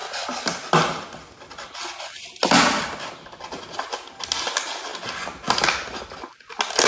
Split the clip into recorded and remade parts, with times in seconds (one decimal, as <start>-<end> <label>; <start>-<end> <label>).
0.0-6.9 recorded